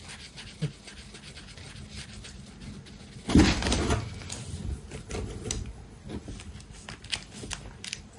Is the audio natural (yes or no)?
yes